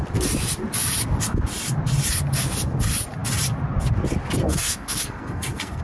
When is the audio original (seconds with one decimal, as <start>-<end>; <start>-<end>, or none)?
0.0-4.4